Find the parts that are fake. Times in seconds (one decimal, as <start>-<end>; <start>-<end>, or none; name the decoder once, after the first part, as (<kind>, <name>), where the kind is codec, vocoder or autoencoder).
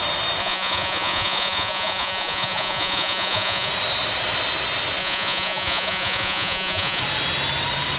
0.4-3.7 (vocoder, Vocos); 5.0-7.0